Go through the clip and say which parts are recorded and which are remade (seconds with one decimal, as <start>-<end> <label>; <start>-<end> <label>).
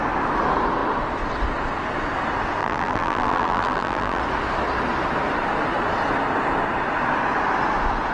0.0-2.6 recorded; 2.6-4.2 remade; 4.2-8.1 recorded